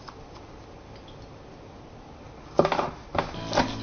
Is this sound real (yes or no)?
yes